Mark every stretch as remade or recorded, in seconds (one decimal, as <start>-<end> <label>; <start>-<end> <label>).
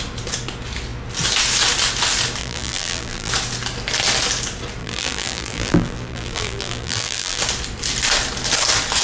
0.0-2.4 recorded; 2.4-3.3 remade; 3.3-4.8 recorded; 4.8-7.4 remade; 7.4-9.0 recorded